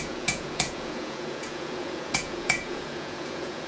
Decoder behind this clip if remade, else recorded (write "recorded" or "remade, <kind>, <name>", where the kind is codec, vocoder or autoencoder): remade, vocoder, Vocos